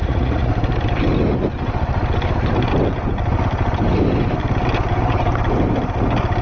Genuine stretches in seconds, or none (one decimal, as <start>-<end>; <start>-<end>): 0.5-6.4